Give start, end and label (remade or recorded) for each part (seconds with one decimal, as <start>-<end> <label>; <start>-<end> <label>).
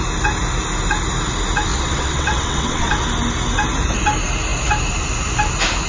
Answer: 0.0-1.7 recorded; 1.7-2.9 remade; 2.9-5.9 recorded